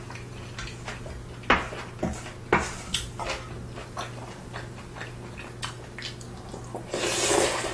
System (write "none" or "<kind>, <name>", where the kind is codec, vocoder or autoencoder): none